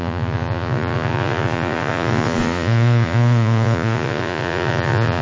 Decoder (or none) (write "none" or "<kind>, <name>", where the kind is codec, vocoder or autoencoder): vocoder, Vocos